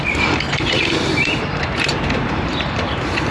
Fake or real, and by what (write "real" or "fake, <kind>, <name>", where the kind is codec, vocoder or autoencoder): fake, vocoder, BigVGAN v2